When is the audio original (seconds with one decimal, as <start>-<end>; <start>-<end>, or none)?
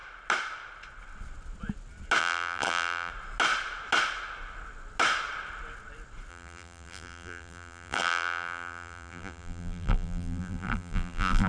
0.0-2.2; 3.1-6.3